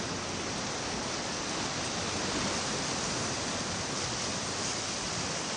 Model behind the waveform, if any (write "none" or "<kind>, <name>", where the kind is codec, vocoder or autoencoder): none